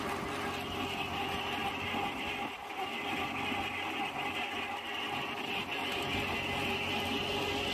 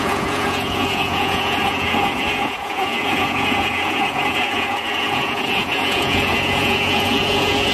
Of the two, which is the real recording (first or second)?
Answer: first